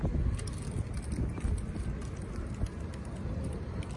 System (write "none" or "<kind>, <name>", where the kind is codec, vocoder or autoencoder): none